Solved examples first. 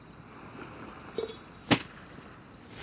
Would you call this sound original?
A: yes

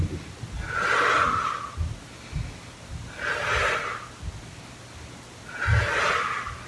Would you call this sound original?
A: yes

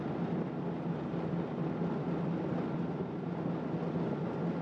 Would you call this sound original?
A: yes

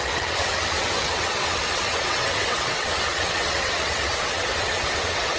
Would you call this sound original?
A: no